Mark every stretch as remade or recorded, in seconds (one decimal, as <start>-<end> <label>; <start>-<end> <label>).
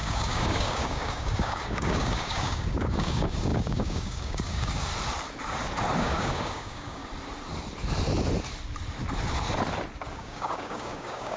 0.0-4.9 remade; 4.9-6.0 recorded; 6.0-7.0 remade; 7.0-10.1 recorded; 10.1-11.4 remade